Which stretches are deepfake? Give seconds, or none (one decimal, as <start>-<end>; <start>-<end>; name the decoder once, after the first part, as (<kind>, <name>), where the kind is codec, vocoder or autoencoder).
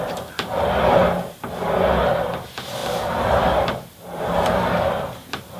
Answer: 0.0-1.0 (vocoder, BigVGAN v2); 2.4-5.6